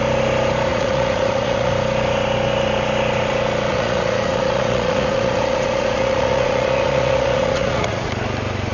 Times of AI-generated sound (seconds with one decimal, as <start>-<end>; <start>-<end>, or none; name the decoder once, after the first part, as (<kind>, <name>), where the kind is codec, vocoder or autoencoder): 0.7-1.7 (vocoder, Vocos); 3.7-8.1